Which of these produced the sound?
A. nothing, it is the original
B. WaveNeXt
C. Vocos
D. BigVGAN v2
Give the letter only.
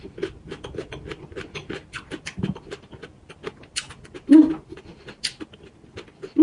A